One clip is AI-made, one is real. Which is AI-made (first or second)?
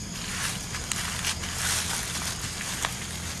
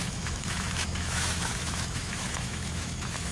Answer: second